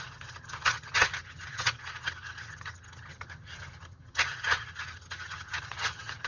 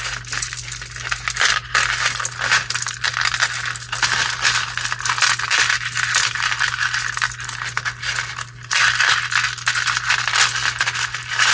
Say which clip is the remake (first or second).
first